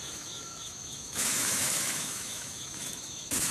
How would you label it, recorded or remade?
remade